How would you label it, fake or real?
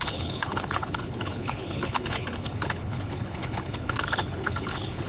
fake